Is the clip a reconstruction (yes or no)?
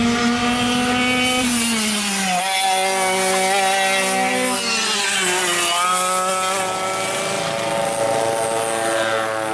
no